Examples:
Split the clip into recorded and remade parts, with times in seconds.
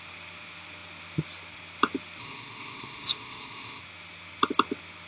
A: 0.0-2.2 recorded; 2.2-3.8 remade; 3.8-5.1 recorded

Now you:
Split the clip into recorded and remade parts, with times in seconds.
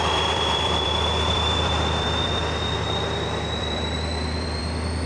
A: 0.0-2.4 remade; 2.4-3.6 recorded; 3.6-4.6 remade; 4.6-5.1 recorded